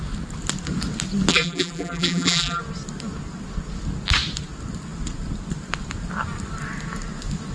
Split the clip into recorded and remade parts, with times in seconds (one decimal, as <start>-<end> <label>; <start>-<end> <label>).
0.0-1.3 recorded; 1.3-2.6 remade; 2.6-7.5 recorded